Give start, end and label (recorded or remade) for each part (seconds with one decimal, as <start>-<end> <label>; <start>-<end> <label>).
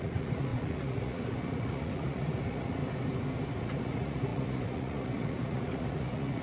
0.0-2.8 remade; 2.8-3.6 recorded; 3.6-6.4 remade